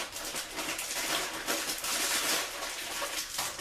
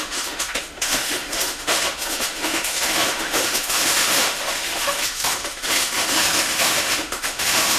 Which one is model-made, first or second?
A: second